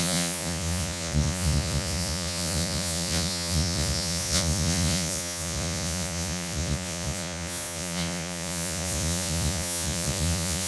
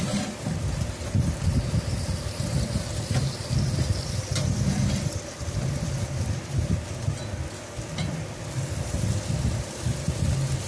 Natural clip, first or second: second